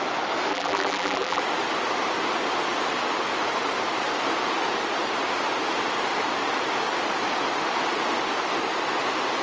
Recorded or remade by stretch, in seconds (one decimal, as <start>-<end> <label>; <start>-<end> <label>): 0.0-0.5 recorded; 0.5-1.4 remade; 1.4-9.4 recorded